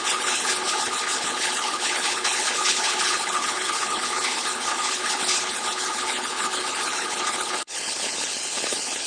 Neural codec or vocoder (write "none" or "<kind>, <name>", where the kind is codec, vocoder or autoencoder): codec, HILCodec